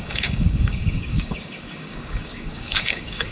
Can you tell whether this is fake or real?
fake